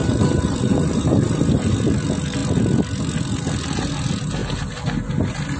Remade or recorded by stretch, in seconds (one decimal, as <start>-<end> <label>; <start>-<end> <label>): 0.0-1.8 remade; 1.8-5.6 recorded